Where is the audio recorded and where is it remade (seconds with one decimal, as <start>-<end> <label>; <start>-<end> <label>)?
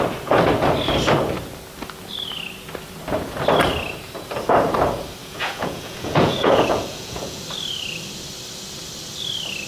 0.0-5.2 recorded; 5.2-7.4 remade; 7.4-9.7 recorded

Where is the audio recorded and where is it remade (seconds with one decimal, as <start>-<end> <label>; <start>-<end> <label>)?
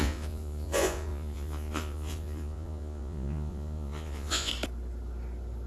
0.0-4.5 remade; 4.5-5.7 recorded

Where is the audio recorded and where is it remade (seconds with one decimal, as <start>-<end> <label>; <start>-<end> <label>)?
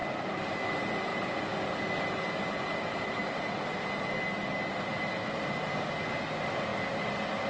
0.0-7.5 recorded